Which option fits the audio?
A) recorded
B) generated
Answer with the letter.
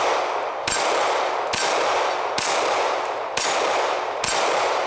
A